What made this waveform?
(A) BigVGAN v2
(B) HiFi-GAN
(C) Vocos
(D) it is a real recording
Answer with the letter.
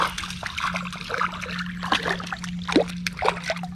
D